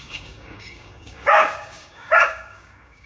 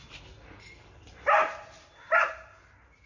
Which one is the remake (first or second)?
first